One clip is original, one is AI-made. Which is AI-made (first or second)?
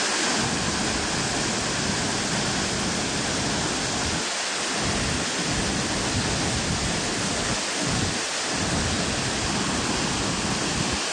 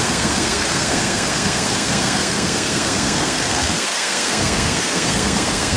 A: second